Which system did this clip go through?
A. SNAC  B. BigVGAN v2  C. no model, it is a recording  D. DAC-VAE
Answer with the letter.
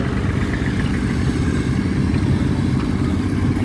C